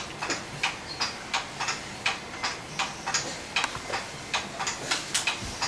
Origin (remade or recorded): recorded